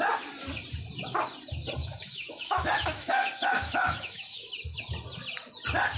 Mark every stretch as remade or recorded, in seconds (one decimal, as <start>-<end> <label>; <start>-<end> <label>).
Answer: 0.0-1.8 recorded; 1.8-4.5 remade; 4.5-6.0 recorded